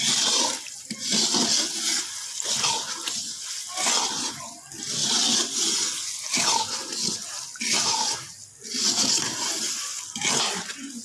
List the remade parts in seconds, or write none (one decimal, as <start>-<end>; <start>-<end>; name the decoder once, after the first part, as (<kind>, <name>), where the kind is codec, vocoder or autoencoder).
5.0-6.4 (vocoder, BigVGAN v2)